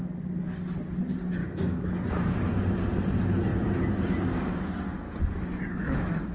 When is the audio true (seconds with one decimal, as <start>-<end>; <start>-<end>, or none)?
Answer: 0.0-1.4; 2.5-6.3